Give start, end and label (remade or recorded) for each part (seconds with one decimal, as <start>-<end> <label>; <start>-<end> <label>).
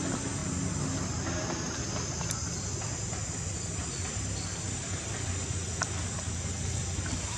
0.0-7.4 recorded